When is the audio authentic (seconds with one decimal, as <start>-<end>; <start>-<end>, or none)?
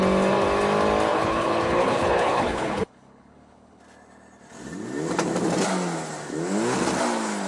0.0-1.1; 3.8-7.5